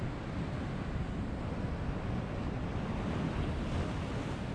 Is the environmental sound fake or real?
real